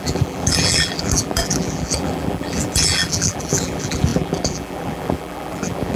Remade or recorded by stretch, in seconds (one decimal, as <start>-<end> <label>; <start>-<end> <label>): 0.0-6.0 remade